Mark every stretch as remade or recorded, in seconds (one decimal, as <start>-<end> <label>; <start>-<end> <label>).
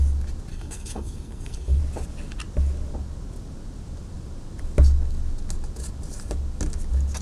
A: 0.0-0.5 recorded; 0.5-1.8 remade; 1.8-7.2 recorded